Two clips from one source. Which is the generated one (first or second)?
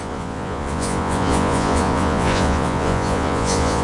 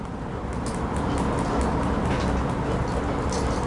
first